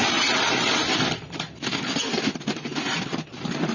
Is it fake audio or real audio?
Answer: real